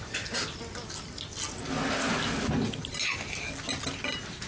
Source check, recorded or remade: recorded